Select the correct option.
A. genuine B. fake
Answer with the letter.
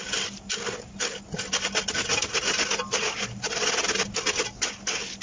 A